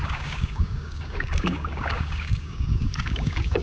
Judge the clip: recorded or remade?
remade